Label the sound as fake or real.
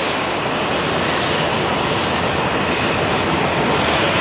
real